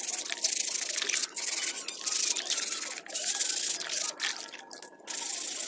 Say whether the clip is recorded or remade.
recorded